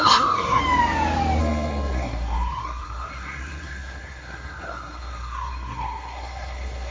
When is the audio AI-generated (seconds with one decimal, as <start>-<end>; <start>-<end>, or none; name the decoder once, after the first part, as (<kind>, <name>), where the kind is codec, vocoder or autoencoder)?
0.0-0.6 (codec, SNAC); 1.4-6.9